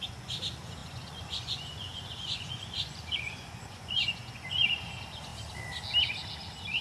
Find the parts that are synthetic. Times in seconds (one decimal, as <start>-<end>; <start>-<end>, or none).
0.0-5.3